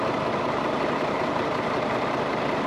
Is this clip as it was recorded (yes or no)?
no